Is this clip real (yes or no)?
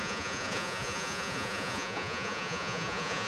no